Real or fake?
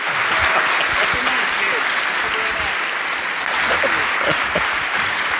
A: real